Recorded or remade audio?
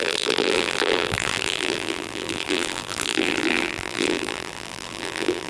remade